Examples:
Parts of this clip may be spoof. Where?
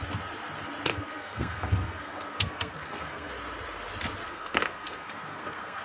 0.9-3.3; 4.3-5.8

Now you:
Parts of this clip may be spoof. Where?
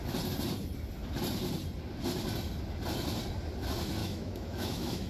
4.0-5.1